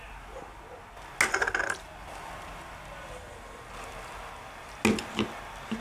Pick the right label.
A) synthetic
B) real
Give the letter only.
B